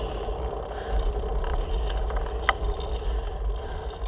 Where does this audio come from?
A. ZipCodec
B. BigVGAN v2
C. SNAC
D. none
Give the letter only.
D